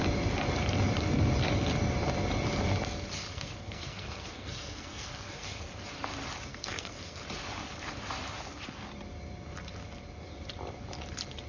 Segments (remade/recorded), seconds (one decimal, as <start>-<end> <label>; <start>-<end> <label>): 0.0-3.3 recorded; 3.3-5.7 remade; 5.7-6.5 recorded; 6.5-7.2 remade; 7.2-11.5 recorded